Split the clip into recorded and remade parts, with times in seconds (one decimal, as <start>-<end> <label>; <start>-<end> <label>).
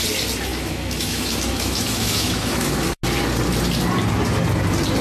0.0-0.5 recorded; 0.5-3.0 remade; 3.0-5.0 recorded